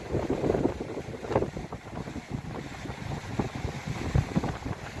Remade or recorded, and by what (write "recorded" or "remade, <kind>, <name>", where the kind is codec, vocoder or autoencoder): remade, vocoder, BigVGAN v2